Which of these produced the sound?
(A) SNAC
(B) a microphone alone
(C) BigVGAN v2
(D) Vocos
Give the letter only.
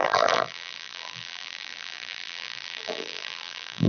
C